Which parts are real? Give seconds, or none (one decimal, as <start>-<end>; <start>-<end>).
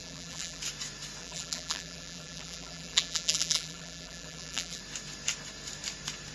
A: 0.6-1.2; 4.8-6.3